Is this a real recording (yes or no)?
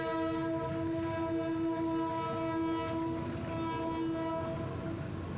yes